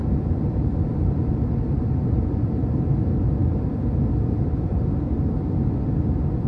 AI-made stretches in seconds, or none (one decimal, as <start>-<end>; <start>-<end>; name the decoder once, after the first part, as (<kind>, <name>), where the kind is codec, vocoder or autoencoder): 0.0-1.3 (vocoder, BigVGAN v2); 3.4-6.5